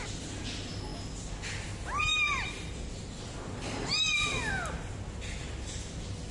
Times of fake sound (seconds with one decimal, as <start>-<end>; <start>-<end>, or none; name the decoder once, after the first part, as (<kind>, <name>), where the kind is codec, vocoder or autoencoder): none